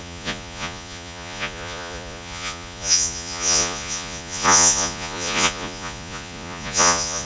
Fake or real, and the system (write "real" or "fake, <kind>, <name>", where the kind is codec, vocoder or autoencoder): fake, vocoder, Vocos